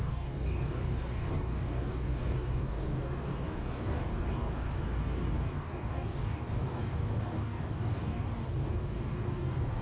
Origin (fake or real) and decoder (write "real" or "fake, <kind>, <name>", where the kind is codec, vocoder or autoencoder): fake, codec, DAC